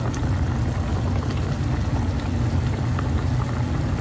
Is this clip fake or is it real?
real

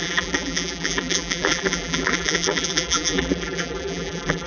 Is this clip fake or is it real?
fake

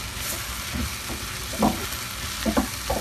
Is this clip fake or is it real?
real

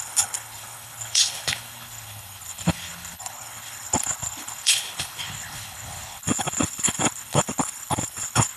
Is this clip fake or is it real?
fake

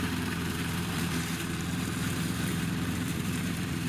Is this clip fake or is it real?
fake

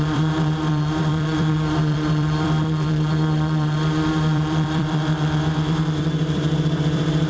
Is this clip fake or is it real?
fake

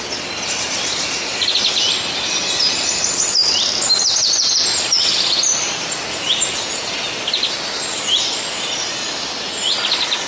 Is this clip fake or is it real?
real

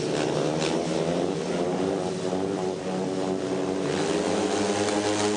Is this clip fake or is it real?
real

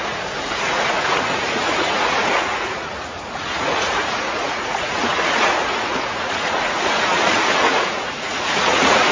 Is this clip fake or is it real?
fake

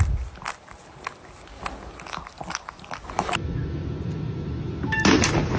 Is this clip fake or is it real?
real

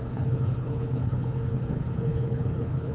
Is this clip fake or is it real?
fake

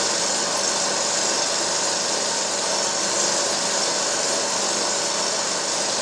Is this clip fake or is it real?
real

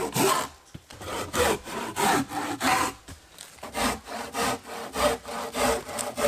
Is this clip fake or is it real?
real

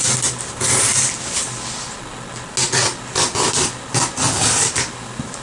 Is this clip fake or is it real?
real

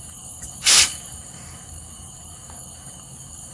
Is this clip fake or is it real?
fake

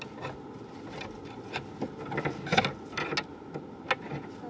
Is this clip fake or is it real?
real